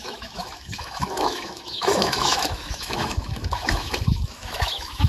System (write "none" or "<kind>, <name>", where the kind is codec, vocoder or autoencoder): autoencoder, DAC-VAE